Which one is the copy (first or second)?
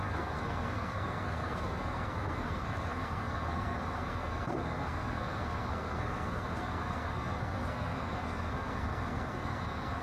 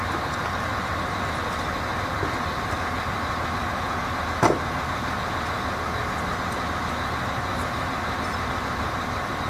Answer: first